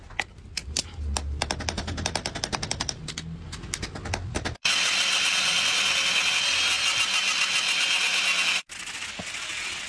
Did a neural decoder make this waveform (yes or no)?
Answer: no